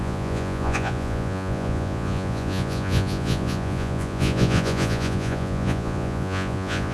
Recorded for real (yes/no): no